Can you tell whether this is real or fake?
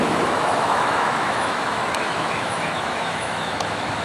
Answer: fake